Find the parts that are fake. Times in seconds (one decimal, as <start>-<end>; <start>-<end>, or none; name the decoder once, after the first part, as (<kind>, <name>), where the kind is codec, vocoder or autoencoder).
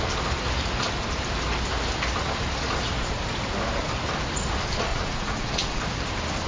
4.9-5.8 (vocoder, Vocos)